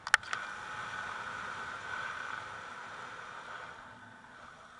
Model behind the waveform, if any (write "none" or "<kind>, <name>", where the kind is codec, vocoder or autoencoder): none